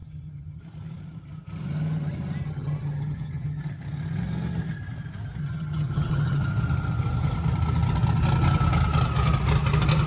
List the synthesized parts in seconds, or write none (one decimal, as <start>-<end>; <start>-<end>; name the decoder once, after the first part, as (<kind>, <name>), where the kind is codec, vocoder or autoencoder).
0.0-0.6 (vocoder, HiFi-GAN); 2.4-3.6; 5.4-6.4